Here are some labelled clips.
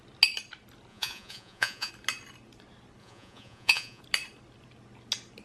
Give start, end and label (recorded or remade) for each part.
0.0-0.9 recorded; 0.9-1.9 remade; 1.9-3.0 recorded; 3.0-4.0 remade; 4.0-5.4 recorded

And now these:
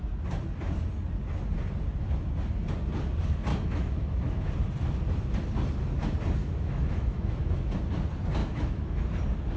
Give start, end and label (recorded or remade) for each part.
0.0-3.5 recorded; 3.5-4.5 remade; 4.5-6.4 recorded; 6.4-7.7 remade; 7.7-8.4 recorded; 8.4-9.0 remade; 9.0-9.6 recorded

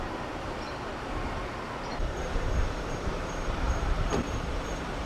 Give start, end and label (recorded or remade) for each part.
0.0-1.9 recorded; 1.9-5.1 remade

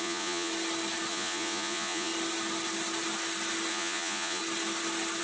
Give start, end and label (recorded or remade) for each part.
0.0-0.5 remade; 0.5-1.1 recorded; 1.1-2.1 remade; 2.1-3.7 recorded; 3.7-4.4 remade; 4.4-5.2 recorded

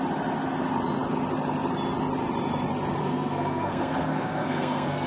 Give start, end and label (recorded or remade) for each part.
0.0-3.0 recorded; 3.0-5.1 remade

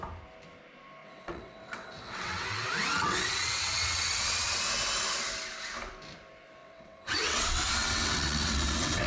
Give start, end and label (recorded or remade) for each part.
0.0-1.0 recorded; 1.0-4.6 remade; 4.6-6.6 recorded; 6.6-9.1 remade